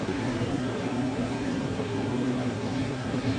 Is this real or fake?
fake